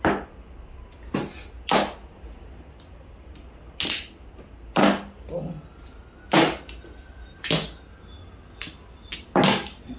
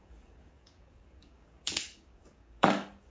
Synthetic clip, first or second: second